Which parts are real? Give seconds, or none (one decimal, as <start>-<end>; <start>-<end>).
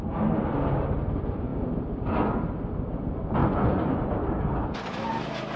0.0-3.4; 4.0-5.6